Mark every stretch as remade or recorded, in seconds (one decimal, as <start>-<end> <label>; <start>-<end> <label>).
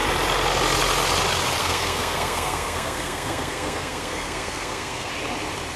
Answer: 0.0-1.6 recorded; 1.6-5.1 remade; 5.1-5.8 recorded